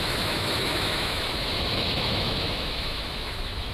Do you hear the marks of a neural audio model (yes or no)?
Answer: yes